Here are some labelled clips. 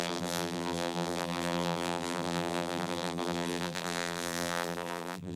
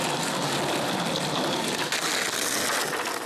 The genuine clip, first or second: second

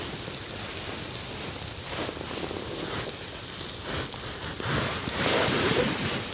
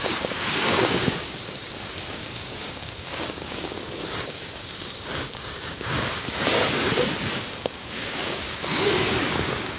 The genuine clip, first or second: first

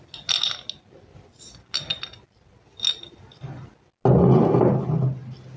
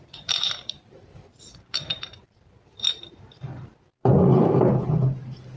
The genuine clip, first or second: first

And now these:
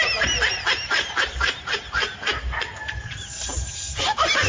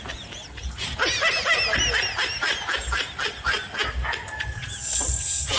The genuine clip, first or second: second